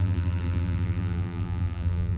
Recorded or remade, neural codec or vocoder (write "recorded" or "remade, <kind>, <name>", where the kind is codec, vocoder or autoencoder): remade, vocoder, BigVGAN v2